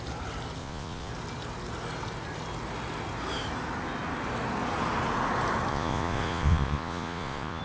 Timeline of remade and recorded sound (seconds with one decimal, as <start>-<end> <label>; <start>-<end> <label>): 0.0-0.6 recorded; 0.6-1.1 remade; 1.1-5.7 recorded; 5.7-7.6 remade